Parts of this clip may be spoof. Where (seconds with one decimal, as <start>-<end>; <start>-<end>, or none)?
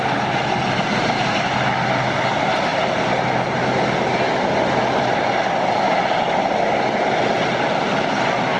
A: none